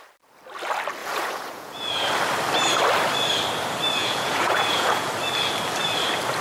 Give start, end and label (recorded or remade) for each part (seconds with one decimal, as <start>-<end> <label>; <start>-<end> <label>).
0.0-1.0 recorded; 1.0-2.1 remade; 2.1-4.0 recorded; 4.0-5.1 remade; 5.1-6.4 recorded